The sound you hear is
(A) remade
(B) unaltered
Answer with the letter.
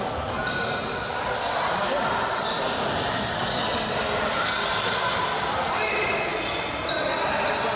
B